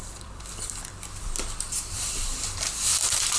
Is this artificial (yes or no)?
yes